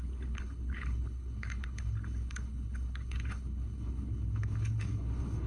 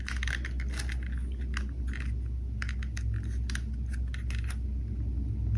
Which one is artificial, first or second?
first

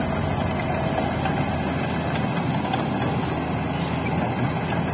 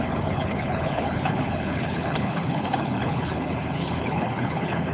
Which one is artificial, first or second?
second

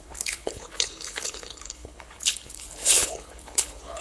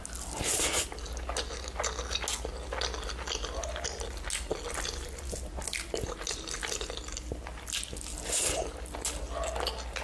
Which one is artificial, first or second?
first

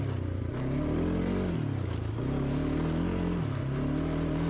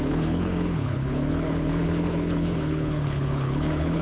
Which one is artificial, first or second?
second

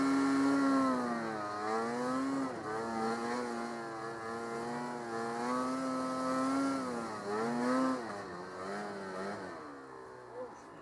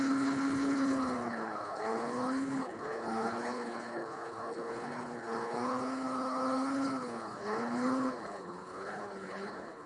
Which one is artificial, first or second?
second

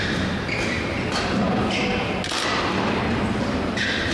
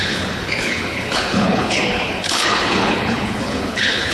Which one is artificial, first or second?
second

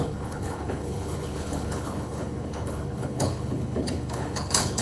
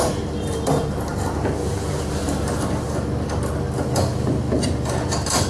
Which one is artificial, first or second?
first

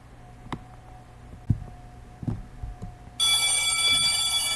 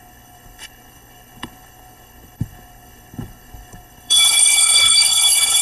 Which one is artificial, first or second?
second